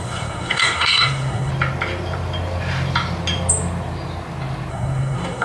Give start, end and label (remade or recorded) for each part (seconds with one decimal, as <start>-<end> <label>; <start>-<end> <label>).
0.0-1.5 remade; 1.5-4.7 recorded; 4.7-5.4 remade